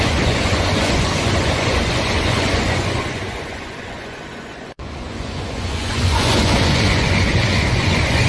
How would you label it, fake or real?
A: fake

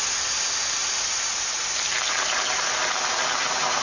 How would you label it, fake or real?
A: real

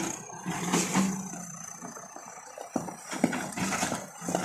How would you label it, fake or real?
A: real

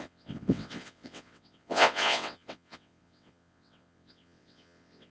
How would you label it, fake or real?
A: fake